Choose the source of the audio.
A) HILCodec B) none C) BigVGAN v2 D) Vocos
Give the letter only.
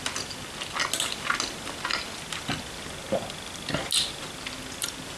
B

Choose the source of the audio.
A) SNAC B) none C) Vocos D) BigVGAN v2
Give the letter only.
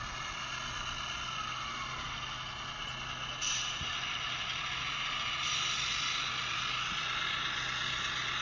B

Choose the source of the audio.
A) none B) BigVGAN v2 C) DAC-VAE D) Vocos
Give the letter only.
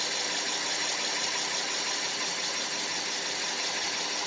A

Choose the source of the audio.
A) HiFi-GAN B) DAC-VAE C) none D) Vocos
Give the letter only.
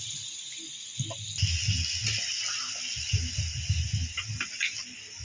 C